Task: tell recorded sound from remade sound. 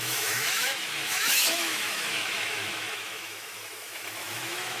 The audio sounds remade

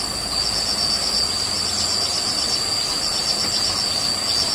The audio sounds recorded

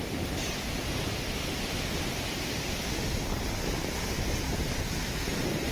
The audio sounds recorded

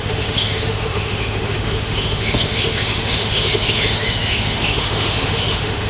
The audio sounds remade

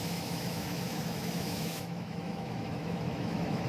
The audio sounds remade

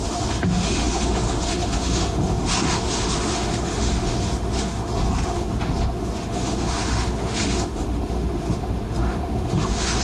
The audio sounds remade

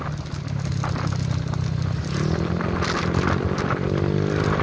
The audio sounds recorded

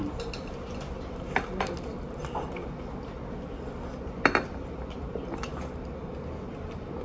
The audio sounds recorded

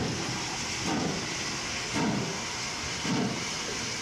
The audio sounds recorded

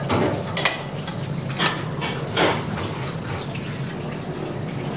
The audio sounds recorded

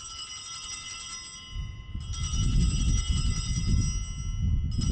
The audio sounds recorded